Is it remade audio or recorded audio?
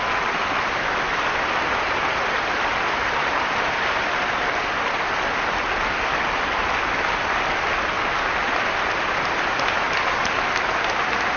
recorded